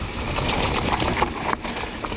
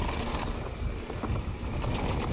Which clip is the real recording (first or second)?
second